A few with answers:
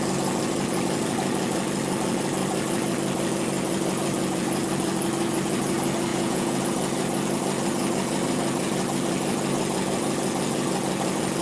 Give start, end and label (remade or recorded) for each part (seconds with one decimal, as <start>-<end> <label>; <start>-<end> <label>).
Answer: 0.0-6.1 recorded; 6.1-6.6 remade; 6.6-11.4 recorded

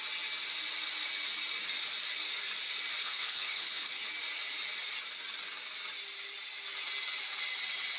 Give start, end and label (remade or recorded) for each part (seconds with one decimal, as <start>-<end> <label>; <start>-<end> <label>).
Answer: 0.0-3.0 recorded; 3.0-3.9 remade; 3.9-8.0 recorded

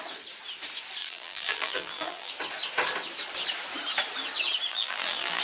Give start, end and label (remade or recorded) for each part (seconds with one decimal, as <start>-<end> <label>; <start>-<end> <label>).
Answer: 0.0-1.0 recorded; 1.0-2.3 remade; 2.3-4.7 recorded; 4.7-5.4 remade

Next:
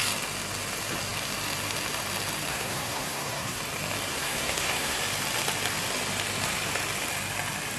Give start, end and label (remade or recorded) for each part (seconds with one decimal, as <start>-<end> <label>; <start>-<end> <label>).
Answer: 0.0-2.5 recorded; 2.5-3.6 remade; 3.6-4.1 recorded; 4.1-5.0 remade; 5.0-7.8 recorded